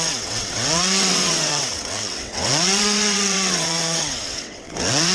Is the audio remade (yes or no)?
yes